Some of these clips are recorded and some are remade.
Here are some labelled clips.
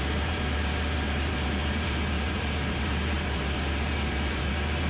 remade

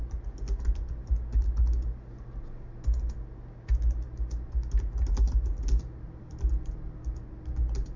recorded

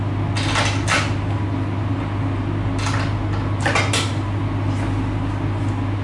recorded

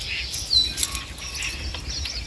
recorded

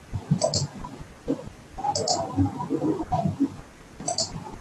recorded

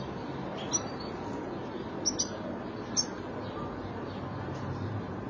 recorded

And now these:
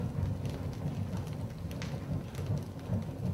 recorded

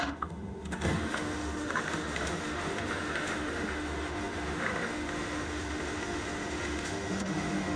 remade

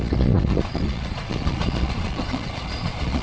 remade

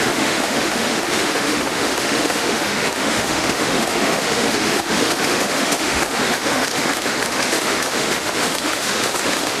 remade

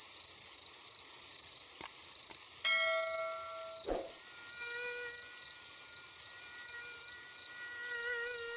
recorded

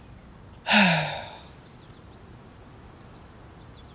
recorded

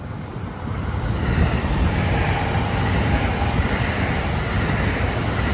recorded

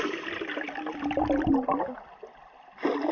recorded